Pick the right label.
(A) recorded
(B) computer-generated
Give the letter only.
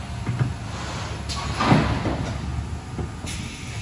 A